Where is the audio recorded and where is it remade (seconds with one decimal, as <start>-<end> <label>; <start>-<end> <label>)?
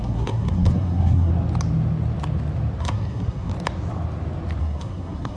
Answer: 0.0-1.3 remade; 1.3-2.8 recorded; 2.8-3.5 remade; 3.5-4.6 recorded; 4.6-5.4 remade